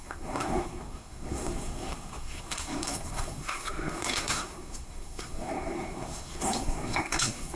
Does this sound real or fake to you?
fake